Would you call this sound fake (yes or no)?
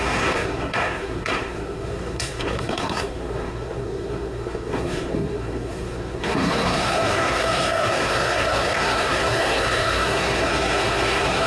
yes